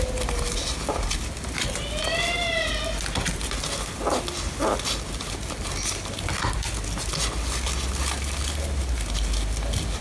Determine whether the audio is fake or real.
real